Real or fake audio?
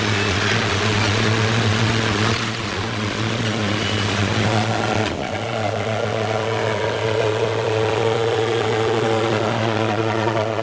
fake